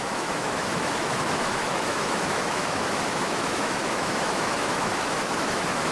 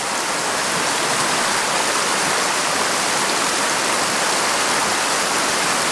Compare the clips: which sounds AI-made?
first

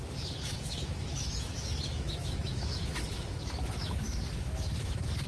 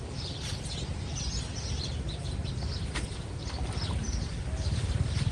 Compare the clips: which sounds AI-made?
first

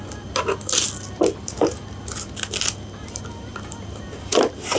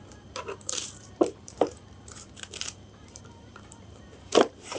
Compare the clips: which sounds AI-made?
second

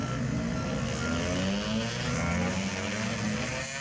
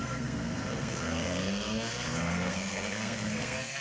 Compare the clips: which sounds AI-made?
second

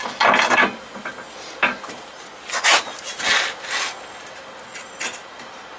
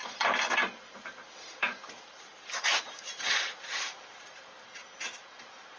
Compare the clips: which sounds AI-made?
second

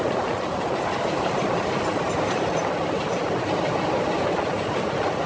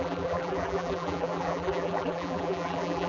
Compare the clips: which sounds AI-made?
second